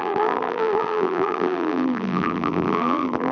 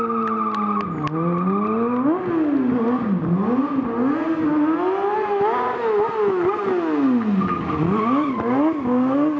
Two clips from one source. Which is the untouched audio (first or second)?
second